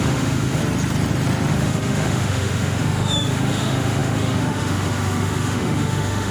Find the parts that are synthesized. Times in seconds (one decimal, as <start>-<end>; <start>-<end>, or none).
0.0-0.6; 1.5-6.3